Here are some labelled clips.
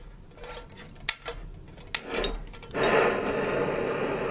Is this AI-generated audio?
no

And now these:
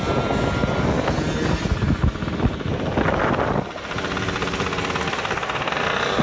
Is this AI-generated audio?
no